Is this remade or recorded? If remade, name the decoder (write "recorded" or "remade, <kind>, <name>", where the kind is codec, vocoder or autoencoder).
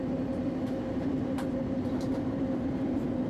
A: remade, vocoder, BigVGAN v2